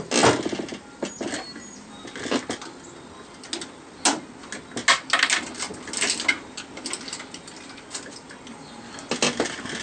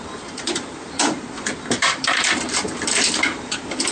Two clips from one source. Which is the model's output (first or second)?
second